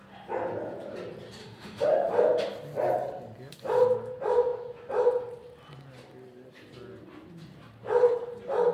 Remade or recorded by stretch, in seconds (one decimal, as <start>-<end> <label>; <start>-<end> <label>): 0.0-1.4 recorded; 1.4-2.1 remade; 2.1-8.7 recorded